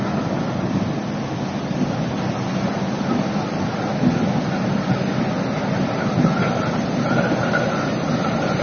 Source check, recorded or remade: recorded